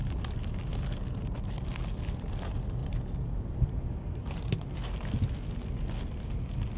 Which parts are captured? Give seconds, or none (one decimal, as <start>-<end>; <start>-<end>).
0.6-2.8; 4.7-6.8